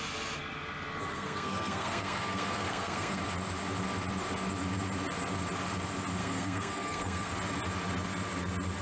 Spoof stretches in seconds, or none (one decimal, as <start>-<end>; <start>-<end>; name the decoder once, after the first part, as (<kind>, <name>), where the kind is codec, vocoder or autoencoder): 1.1-3.2 (codec, SNAC); 6.2-7.3